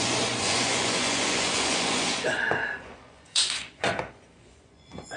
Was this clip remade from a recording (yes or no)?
yes